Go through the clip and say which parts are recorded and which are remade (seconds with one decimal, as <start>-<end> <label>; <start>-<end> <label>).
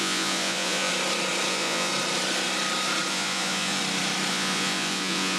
0.0-0.9 remade; 0.9-1.5 recorded; 1.5-1.9 remade; 1.9-3.1 recorded; 3.1-3.8 remade; 3.8-4.3 recorded; 4.3-5.4 remade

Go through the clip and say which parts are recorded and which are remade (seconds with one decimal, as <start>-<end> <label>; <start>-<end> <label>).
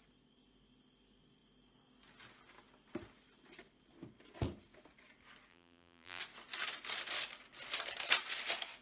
0.0-5.5 recorded; 5.5-6.2 remade; 6.2-8.8 recorded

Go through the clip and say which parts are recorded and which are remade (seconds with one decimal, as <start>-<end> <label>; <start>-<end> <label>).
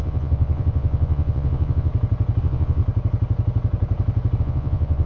0.0-1.9 remade; 1.9-2.4 recorded; 2.4-2.8 remade; 2.8-4.4 recorded; 4.4-5.1 remade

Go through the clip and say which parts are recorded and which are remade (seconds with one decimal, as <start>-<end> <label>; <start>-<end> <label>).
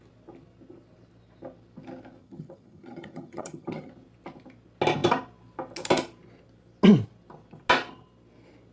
0.0-2.2 recorded; 2.2-3.9 remade; 3.9-8.7 recorded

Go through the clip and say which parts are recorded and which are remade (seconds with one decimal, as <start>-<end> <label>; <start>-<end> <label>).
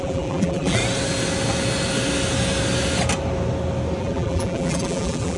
0.0-0.8 remade; 0.8-4.0 recorded; 4.0-5.4 remade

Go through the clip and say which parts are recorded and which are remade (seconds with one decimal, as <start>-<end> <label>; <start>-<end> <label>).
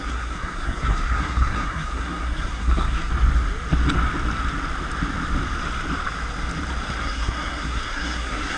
0.0-3.1 remade; 3.1-7.0 recorded; 7.0-8.6 remade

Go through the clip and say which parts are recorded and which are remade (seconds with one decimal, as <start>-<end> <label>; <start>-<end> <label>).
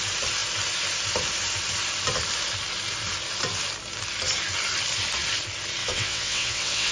0.0-5.8 recorded; 5.8-6.9 remade